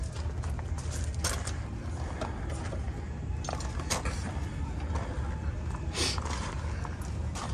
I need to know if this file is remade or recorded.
recorded